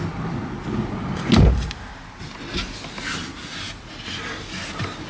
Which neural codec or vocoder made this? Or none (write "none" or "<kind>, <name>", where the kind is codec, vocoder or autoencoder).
none